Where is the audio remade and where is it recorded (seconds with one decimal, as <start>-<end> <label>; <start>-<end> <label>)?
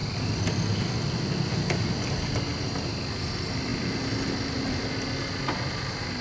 0.0-6.2 recorded